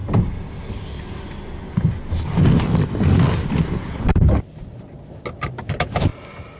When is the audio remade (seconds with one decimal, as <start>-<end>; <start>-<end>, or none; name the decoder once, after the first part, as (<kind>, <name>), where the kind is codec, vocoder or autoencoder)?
none